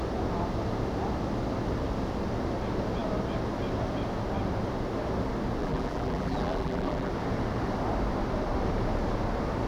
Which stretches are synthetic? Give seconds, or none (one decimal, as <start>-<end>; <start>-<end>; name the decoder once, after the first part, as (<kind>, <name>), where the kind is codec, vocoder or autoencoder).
5.6-7.1 (vocoder, BigVGAN v2)